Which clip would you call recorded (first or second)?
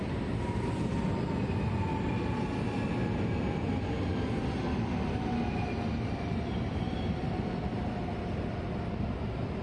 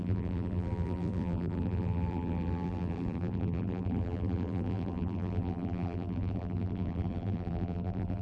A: first